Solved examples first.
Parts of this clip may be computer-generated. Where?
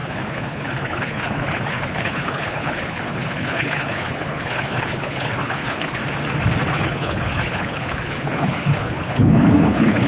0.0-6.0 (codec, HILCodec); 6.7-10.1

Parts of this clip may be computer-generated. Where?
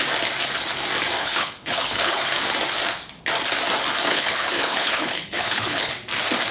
1.2-2.2 (codec, HILCodec); 4.1-5.9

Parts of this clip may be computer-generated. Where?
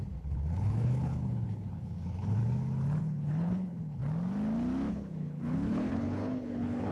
0.0-2.4 (codec, HILCodec); 3.0-4.0; 4.9-6.9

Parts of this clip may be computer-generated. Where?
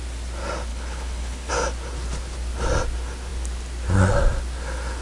0.7-1.5 (codec, HILCodec)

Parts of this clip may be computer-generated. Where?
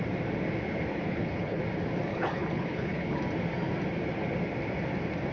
0.9-1.6 (codec, HILCodec); 2.1-3.2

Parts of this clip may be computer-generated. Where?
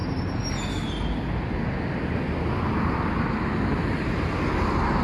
none